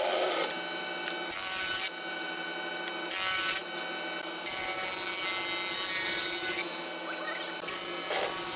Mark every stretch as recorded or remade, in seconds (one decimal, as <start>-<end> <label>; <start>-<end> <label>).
0.0-8.6 recorded